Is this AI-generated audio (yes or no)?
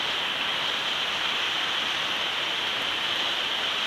no